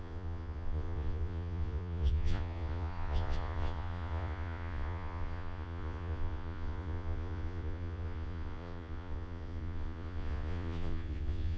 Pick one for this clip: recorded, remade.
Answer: remade